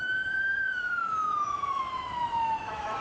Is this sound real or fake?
fake